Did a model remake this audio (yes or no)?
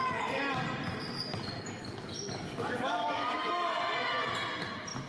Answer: no